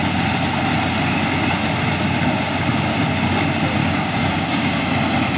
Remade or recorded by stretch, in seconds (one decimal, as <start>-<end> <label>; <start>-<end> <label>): 0.0-3.8 recorded; 3.8-4.8 remade; 4.8-5.4 recorded